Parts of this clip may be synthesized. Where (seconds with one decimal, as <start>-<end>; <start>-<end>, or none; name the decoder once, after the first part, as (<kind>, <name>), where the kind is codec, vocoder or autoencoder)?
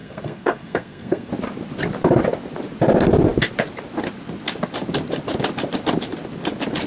0.0-1.3 (codec, SNAC)